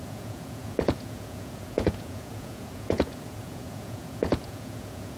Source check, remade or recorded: remade